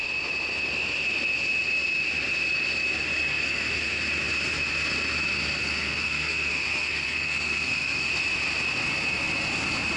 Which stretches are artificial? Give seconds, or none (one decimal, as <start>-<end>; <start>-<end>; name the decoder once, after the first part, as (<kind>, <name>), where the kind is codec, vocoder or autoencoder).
3.3-4.0 (codec, SNAC); 5.6-8.1